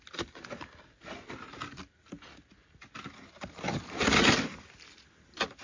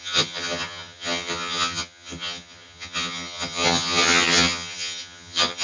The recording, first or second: first